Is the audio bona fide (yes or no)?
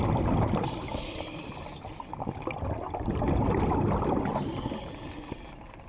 yes